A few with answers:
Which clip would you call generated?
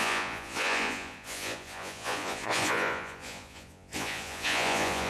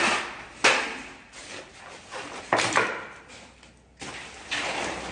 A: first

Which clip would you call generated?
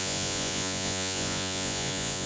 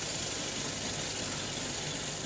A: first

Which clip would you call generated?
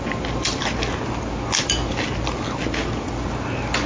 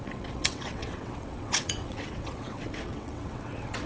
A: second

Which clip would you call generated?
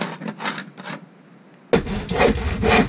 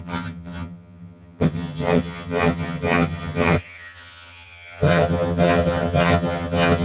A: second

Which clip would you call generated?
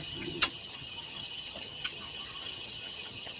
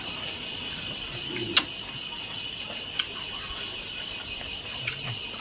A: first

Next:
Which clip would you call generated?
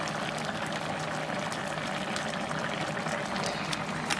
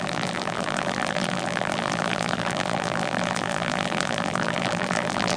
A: second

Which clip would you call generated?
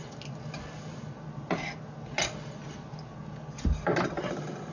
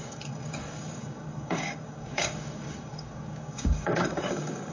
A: second